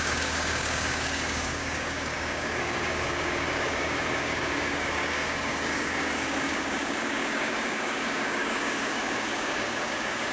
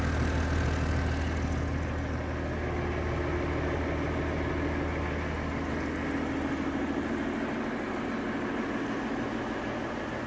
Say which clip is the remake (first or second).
first